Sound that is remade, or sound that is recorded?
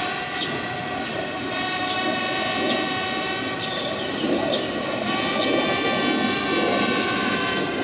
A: recorded